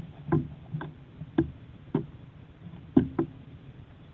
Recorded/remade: recorded